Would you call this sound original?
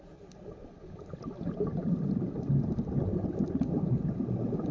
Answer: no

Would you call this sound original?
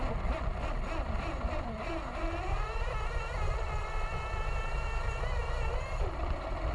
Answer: yes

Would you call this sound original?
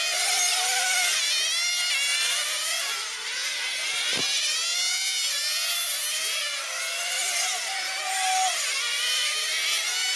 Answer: yes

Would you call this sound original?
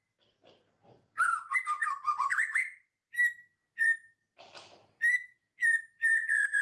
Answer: no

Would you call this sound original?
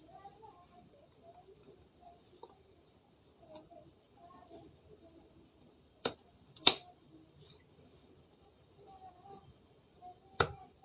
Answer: no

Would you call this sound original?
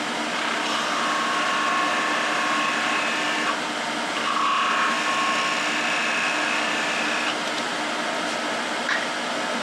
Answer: yes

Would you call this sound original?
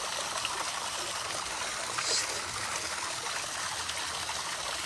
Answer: yes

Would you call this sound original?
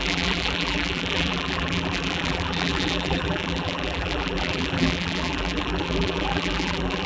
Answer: no